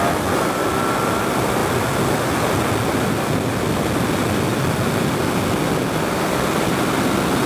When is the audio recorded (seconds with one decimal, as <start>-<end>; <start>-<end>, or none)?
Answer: 0.0-7.5